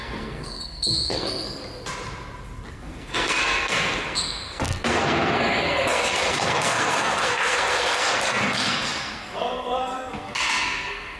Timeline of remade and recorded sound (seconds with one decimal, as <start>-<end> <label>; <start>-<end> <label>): 0.0-1.6 remade; 1.6-2.7 recorded; 2.7-11.2 remade